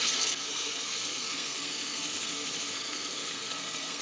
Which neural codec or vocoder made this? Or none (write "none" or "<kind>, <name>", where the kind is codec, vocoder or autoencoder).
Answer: codec, SNAC